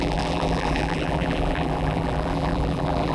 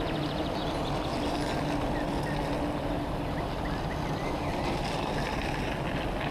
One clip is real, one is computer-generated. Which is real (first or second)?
second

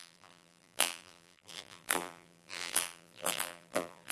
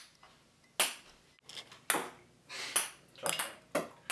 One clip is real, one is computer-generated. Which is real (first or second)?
second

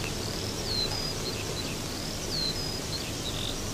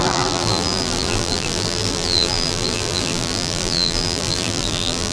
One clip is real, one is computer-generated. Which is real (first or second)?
first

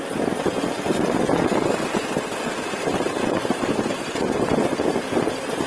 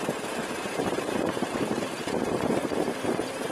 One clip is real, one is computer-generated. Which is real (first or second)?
first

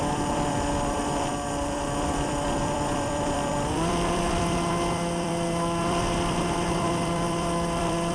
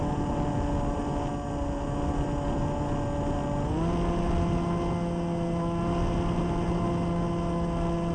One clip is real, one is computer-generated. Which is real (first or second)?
second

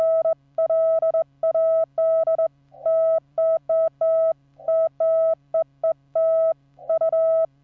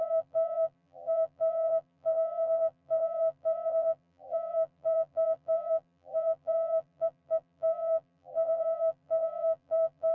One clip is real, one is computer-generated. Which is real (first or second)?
first